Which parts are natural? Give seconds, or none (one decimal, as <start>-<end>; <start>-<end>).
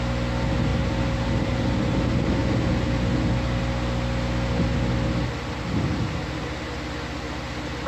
0.0-7.9